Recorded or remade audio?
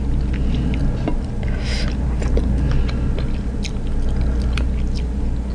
recorded